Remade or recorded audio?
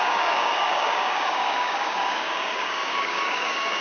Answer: remade